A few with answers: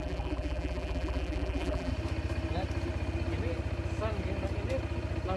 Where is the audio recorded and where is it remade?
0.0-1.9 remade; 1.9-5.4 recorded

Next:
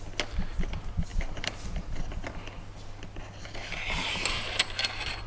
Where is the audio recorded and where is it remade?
0.0-1.1 recorded; 1.1-2.0 remade; 2.0-5.3 recorded

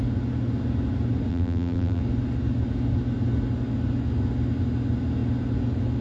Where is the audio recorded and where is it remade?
0.0-1.3 recorded; 1.3-2.0 remade; 2.0-6.0 recorded

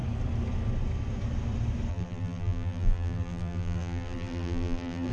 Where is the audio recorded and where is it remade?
0.0-1.9 recorded; 1.9-5.1 remade

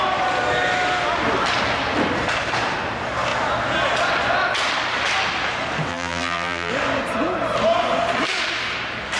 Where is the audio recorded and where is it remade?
0.0-5.9 recorded; 5.9-6.7 remade; 6.7-9.2 recorded

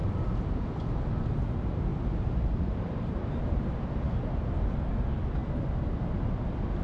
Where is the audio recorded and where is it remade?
0.0-1.0 remade; 1.0-1.9 recorded; 1.9-4.6 remade; 4.6-6.8 recorded